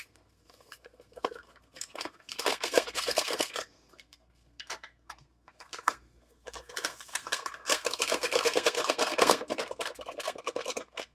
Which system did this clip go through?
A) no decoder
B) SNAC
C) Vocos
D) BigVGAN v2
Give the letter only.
B